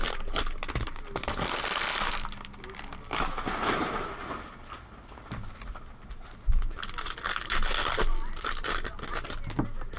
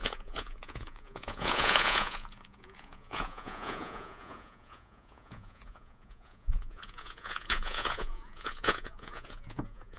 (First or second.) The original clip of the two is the first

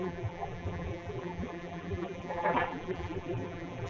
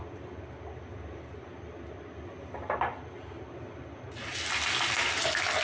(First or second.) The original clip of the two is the second